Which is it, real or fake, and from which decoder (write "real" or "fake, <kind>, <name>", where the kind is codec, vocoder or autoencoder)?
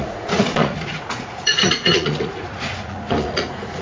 fake, vocoder, Vocos